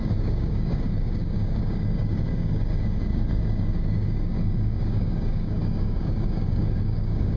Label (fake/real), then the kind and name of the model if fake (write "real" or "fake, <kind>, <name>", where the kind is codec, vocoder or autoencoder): fake, codec, DAC